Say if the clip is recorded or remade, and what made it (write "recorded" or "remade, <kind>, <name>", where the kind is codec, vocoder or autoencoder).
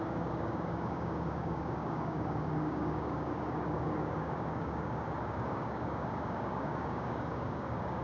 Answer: remade, codec, DAC